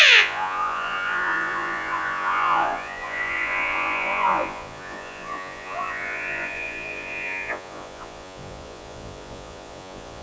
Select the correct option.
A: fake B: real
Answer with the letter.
A